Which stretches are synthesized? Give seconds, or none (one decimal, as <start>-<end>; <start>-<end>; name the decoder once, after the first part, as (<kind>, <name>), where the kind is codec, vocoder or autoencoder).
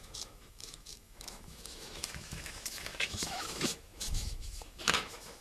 0.0-5.4 (autoencoder, DAC-VAE)